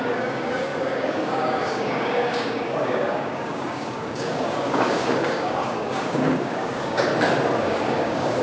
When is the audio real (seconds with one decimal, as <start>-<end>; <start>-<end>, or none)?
7.1-7.6